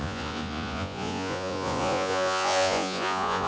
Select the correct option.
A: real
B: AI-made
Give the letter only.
B